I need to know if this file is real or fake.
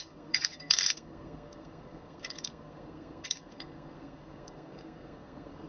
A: fake